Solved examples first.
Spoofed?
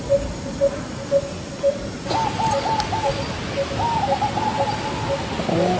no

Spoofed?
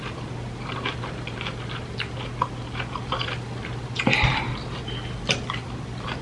yes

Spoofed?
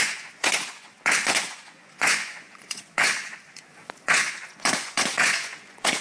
yes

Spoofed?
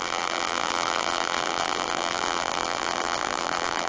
yes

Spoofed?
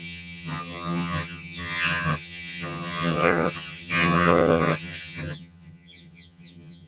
yes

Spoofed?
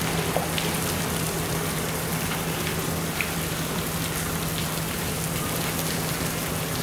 no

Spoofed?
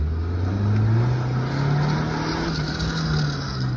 no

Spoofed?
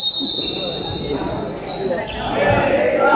no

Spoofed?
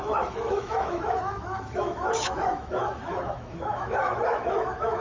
yes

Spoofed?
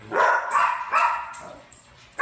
yes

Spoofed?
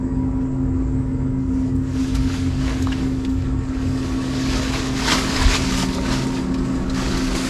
yes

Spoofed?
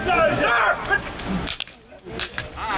no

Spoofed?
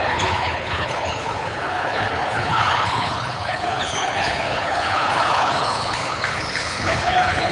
yes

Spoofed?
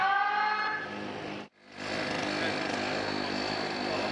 no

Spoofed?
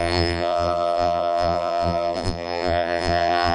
yes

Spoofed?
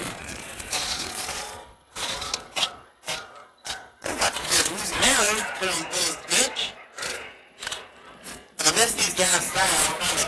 yes